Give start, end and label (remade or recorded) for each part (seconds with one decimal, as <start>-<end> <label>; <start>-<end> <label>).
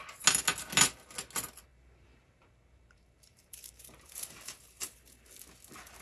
0.0-1.7 recorded; 1.7-5.3 remade; 5.3-6.0 recorded